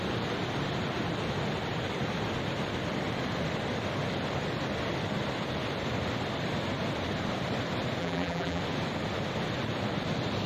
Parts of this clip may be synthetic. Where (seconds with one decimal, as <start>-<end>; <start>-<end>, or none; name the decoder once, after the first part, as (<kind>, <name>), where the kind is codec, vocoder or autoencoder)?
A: 8.0-8.6 (vocoder, BigVGAN v2)